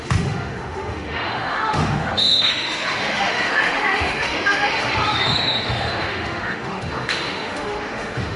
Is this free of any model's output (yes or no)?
no